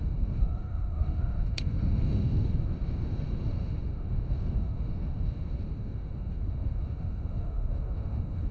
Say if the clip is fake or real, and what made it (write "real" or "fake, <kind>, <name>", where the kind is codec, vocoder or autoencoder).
fake, autoencoder, DAC-VAE